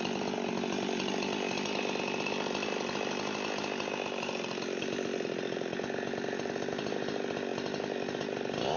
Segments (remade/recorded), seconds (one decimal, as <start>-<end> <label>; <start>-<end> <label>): 0.0-8.8 recorded